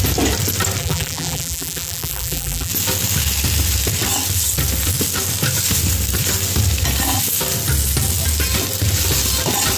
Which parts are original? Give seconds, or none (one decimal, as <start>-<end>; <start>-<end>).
0.0-0.8; 2.7-9.8